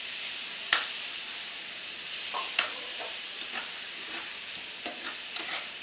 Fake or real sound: fake